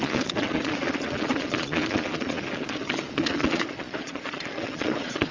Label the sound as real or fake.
fake